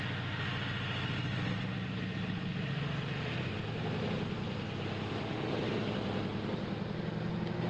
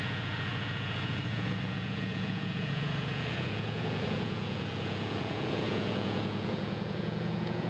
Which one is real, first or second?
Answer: first